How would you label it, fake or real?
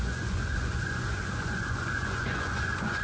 fake